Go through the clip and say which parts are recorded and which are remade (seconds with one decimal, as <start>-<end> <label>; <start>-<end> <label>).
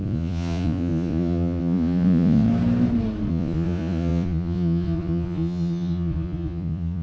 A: 0.0-2.5 remade; 2.5-3.3 recorded; 3.3-7.0 remade